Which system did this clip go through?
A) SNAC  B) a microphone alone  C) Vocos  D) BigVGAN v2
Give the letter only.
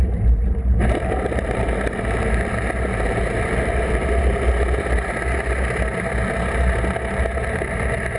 D